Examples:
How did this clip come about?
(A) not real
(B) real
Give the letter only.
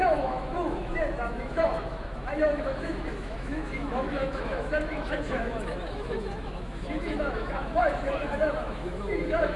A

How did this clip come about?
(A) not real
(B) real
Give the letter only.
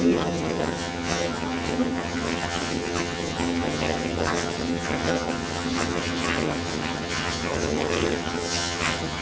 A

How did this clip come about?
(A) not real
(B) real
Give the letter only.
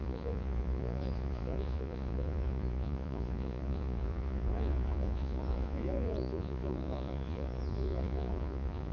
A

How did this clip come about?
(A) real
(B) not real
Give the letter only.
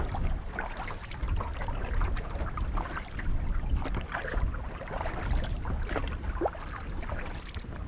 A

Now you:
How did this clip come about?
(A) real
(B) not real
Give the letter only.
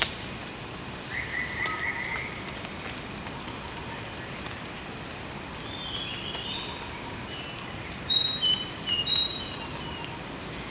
A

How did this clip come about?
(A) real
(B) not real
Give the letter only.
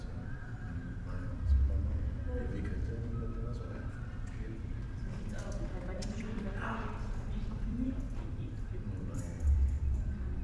B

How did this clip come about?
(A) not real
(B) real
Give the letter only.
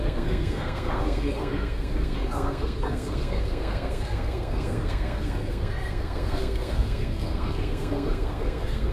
A